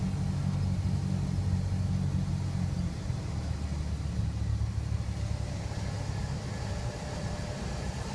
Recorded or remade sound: recorded